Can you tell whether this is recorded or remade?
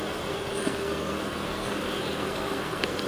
remade